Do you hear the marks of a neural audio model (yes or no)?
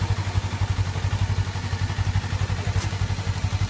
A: no